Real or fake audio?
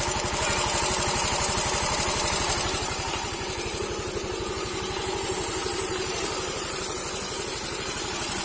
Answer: real